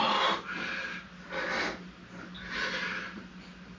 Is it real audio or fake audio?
real